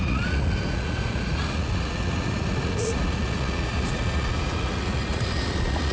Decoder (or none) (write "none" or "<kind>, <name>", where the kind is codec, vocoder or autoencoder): vocoder, Vocos